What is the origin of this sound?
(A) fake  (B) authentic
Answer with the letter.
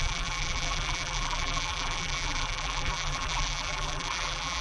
A